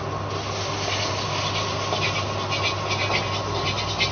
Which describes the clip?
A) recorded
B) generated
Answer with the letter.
A